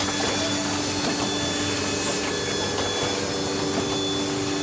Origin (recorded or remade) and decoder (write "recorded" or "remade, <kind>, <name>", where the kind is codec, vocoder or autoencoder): recorded